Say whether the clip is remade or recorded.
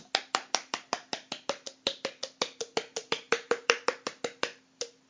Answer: remade